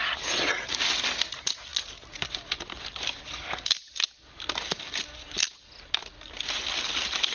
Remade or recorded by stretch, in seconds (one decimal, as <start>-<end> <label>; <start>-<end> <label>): 0.0-7.3 recorded